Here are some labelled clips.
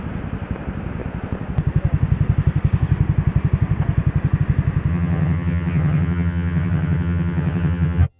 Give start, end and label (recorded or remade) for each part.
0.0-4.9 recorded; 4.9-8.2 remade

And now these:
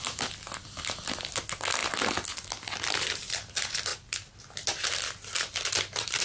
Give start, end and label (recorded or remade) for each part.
0.0-6.2 recorded